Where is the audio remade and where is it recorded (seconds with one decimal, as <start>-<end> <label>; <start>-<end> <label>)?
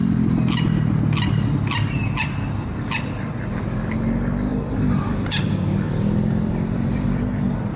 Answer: 0.0-4.5 recorded; 4.5-7.2 remade; 7.2-7.8 recorded